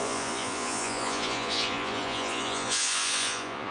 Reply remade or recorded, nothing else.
remade